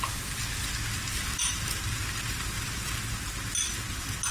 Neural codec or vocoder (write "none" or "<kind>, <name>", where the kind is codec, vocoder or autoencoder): none